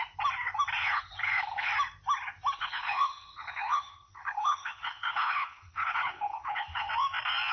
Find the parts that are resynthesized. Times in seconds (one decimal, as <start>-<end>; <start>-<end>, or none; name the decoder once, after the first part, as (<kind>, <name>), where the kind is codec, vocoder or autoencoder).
0.8-1.7 (codec, HILCodec); 2.6-6.9